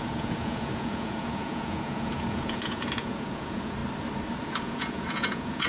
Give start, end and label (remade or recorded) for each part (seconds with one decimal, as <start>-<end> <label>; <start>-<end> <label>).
0.0-3.8 remade; 3.8-4.4 recorded; 4.4-5.7 remade